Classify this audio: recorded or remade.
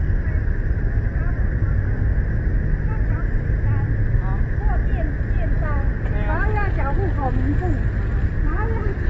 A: recorded